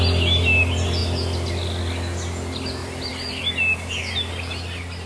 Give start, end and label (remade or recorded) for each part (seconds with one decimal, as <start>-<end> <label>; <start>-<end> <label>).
0.0-2.8 recorded; 2.8-3.5 remade; 3.5-5.1 recorded